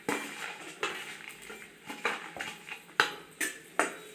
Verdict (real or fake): real